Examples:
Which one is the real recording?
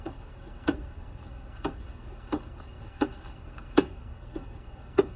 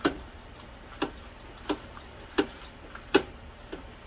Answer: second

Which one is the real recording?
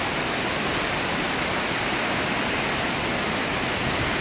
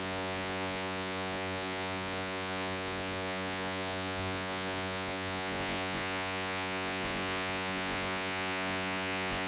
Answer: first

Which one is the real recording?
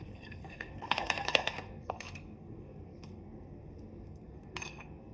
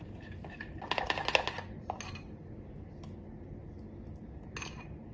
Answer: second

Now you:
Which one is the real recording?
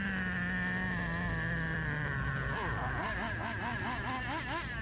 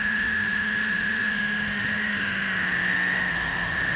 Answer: first